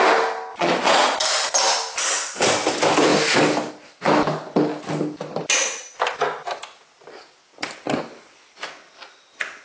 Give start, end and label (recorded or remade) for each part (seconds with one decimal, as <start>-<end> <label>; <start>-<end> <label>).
0.0-0.5 recorded; 0.5-1.2 remade; 1.2-9.6 recorded